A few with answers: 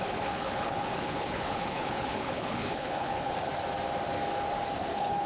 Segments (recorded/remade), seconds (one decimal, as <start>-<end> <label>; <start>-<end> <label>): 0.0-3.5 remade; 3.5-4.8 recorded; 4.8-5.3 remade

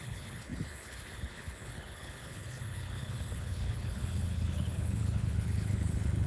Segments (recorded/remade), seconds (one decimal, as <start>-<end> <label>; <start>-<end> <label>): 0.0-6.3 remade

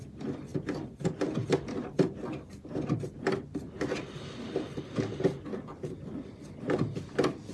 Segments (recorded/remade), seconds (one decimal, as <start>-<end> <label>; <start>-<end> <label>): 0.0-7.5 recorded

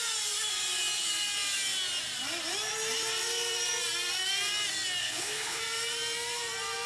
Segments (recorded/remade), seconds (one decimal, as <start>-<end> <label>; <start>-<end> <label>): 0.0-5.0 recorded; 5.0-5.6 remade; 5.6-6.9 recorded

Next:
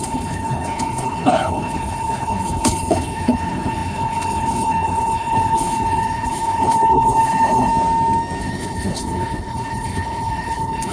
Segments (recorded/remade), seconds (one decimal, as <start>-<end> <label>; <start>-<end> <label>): 0.0-7.7 remade; 7.7-8.4 recorded; 8.4-10.9 remade